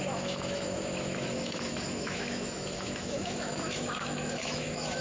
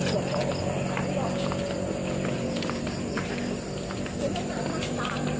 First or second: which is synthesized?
first